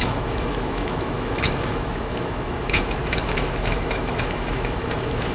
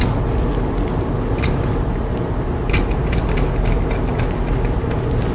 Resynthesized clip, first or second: first